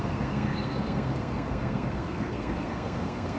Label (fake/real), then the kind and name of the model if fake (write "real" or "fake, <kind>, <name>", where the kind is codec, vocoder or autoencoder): fake, codec, SNAC